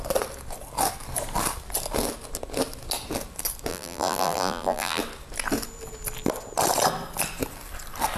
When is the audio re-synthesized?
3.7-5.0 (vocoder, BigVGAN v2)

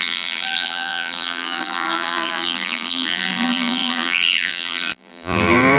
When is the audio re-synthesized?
0.0-5.8 (vocoder, BigVGAN v2)